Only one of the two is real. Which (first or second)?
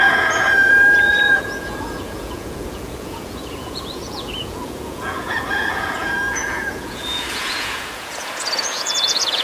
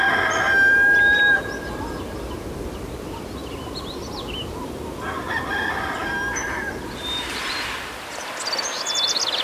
second